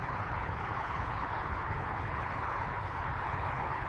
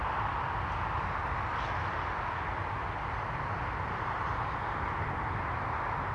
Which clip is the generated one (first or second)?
first